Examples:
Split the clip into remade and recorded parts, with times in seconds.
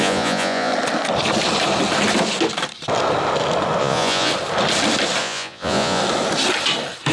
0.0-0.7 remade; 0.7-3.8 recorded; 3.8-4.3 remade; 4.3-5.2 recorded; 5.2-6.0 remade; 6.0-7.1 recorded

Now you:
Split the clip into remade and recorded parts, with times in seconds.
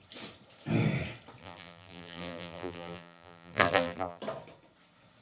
0.0-1.4 recorded; 1.4-4.2 remade; 4.2-5.2 recorded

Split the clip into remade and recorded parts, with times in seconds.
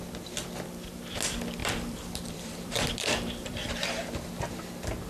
0.0-1.6 recorded; 1.6-4.3 remade; 4.3-5.1 recorded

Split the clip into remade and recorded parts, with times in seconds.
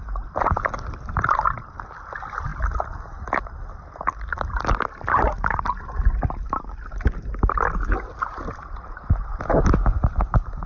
0.0-10.7 recorded